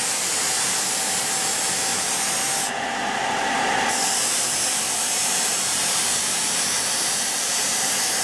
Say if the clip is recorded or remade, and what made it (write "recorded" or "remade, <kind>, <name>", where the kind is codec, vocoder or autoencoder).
remade, vocoder, BigVGAN v2